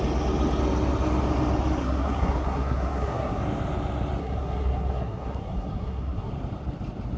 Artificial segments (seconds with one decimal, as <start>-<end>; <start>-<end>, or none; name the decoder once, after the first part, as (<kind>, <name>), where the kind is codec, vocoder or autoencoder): 1.8-3.4 (codec, SNAC); 4.2-6.3

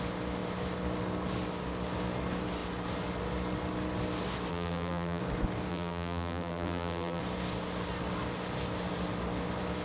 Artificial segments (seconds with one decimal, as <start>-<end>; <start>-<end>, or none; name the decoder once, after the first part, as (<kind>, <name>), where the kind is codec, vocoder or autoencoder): 4.5-5.2 (vocoder, BigVGAN v2); 5.7-7.2

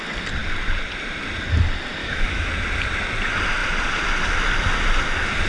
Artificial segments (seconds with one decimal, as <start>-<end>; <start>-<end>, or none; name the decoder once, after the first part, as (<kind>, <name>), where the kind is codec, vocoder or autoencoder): 2.0-2.5 (autoencoder, DAC-VAE)

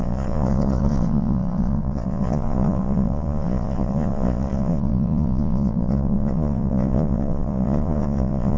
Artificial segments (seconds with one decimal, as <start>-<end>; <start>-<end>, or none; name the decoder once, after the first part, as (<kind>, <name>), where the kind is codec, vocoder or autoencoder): 0.0-8.6 (vocoder, Vocos)

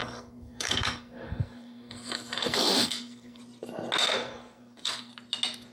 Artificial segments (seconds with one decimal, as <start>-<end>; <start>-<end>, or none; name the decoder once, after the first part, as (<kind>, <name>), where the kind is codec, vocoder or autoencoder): 0.0-3.4 (codec, SNAC); 4.0-5.1

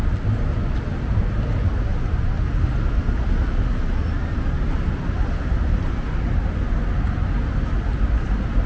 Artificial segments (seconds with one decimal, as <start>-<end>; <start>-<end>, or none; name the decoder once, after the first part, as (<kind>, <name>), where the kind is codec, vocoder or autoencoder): none